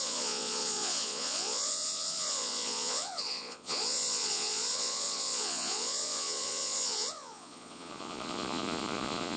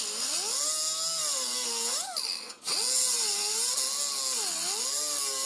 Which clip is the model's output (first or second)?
first